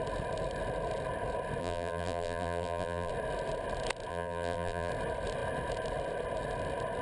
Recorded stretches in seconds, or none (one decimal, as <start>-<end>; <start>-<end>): 0.0-1.6; 3.1-4.1; 4.9-7.0